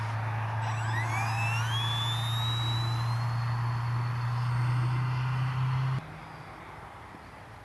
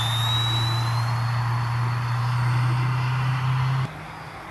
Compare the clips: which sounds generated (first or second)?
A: second